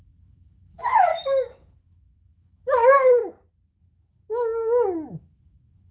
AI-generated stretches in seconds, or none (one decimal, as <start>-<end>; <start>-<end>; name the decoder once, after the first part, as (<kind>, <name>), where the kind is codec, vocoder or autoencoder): 0.0-1.1 (autoencoder, DAC-VAE); 1.7-3.2; 3.8-5.9